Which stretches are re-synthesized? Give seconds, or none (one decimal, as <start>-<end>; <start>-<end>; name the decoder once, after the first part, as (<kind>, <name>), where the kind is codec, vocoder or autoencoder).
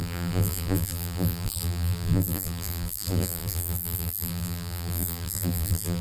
0.0-6.0 (vocoder, BigVGAN v2)